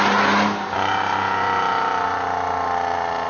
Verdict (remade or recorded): recorded